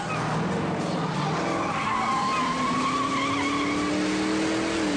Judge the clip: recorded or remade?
recorded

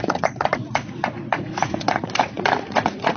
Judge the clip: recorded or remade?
remade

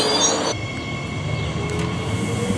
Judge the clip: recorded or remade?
recorded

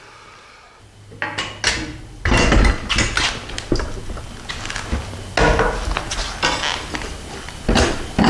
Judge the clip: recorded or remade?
recorded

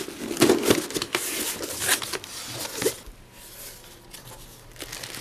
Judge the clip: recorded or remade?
recorded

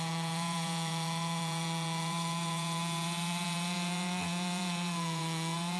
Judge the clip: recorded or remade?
remade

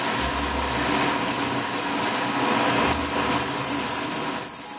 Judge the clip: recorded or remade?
recorded